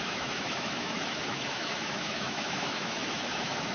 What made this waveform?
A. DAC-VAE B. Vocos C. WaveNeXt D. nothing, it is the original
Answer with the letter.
A